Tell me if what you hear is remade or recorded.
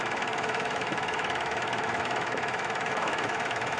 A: remade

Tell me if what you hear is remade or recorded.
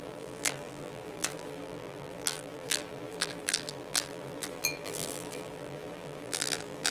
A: remade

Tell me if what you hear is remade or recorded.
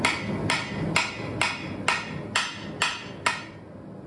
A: recorded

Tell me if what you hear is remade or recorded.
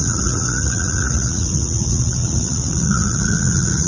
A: remade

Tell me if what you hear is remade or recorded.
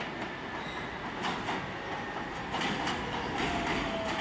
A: recorded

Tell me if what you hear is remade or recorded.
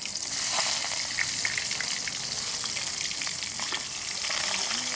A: recorded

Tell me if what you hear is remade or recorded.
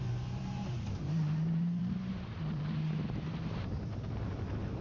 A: remade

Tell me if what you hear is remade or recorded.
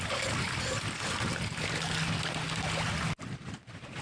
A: recorded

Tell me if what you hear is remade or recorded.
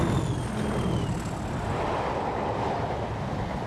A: recorded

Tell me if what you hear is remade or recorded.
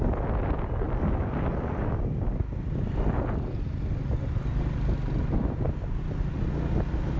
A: recorded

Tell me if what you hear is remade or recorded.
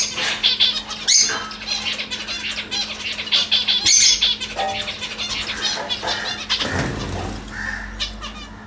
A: recorded